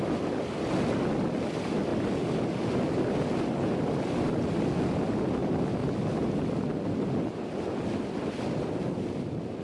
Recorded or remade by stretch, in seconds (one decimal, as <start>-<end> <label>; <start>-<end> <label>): 0.0-9.6 recorded